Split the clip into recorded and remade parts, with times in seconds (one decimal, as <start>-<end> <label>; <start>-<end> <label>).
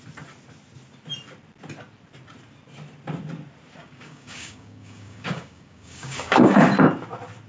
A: 0.0-3.8 recorded; 3.8-6.6 remade; 6.6-7.5 recorded